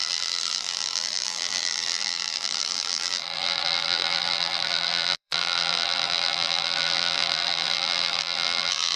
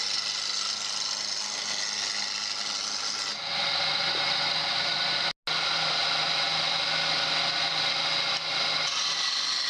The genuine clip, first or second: second